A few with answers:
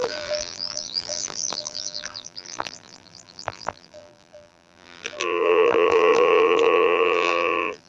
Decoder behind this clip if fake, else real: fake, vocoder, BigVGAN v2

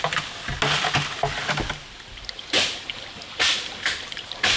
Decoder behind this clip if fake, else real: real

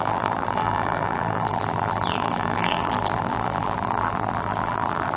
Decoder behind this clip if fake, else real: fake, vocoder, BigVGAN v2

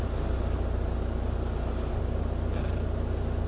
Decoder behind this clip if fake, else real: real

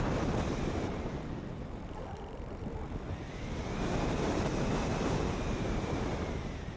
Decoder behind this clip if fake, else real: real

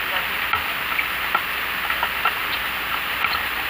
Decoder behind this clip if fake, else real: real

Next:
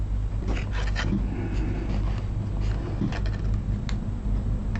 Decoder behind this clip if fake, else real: real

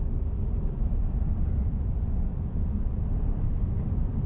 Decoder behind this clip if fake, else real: fake, vocoder, BigVGAN v2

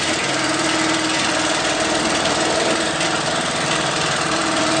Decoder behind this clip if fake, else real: fake, vocoder, BigVGAN v2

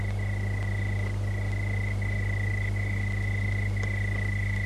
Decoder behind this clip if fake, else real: real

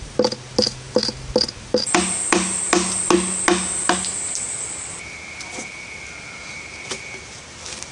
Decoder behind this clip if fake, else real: real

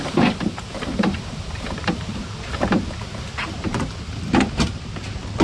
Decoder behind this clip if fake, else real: fake, vocoder, BigVGAN v2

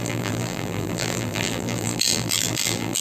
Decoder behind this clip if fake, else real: fake, vocoder, BigVGAN v2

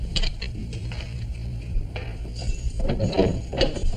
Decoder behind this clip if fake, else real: fake, vocoder, BigVGAN v2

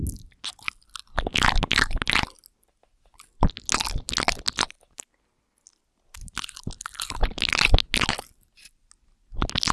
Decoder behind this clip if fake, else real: real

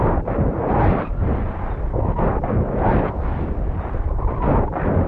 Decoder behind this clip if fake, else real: fake, vocoder, BigVGAN v2